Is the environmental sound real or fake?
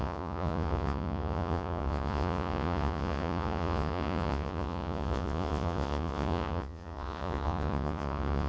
fake